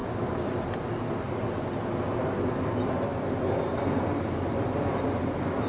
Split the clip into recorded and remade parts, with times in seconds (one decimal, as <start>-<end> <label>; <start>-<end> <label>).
0.0-5.7 recorded